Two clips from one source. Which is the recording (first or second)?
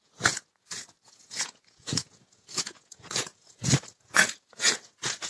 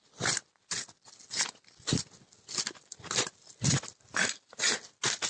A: second